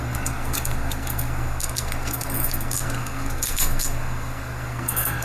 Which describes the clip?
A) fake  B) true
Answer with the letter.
A